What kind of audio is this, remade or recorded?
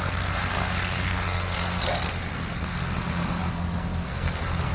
remade